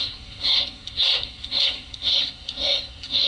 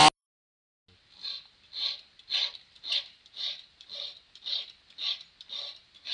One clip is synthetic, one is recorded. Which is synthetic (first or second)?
first